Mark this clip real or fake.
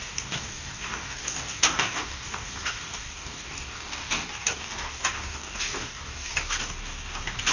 fake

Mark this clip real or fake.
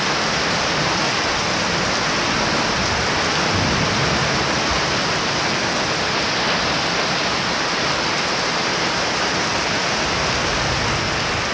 real